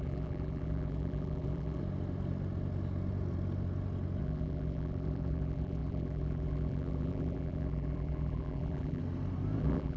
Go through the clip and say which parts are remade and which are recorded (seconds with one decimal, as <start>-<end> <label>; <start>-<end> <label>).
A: 0.0-1.8 remade; 1.8-4.2 recorded; 4.2-9.0 remade; 9.0-9.6 recorded; 9.6-10.0 remade